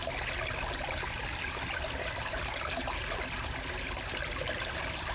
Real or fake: real